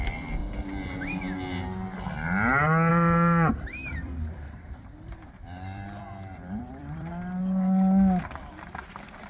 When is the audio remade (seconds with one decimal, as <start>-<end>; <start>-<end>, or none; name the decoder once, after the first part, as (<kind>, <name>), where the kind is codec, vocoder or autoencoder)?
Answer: 0.0-0.4 (vocoder, BigVGAN v2); 2.9-7.1; 8.2-9.3